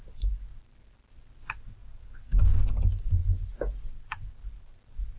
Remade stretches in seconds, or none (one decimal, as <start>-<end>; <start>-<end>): none

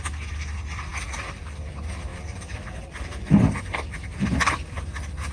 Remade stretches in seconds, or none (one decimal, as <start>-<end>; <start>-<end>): 2.1-4.8